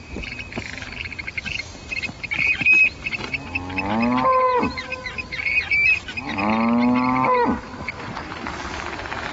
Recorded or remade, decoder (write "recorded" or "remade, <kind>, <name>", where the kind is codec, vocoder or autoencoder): recorded